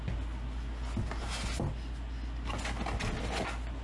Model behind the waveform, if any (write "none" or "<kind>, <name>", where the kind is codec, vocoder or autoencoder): none